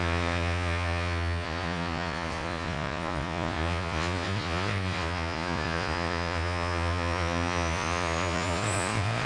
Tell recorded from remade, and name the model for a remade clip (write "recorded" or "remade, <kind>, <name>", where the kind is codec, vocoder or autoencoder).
remade, vocoder, Vocos